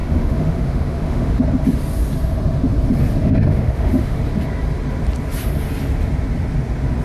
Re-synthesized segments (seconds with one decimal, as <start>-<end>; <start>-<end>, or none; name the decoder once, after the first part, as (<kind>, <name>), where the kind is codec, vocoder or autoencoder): 0.0-1.4 (autoencoder, DAC-VAE); 3.2-4.2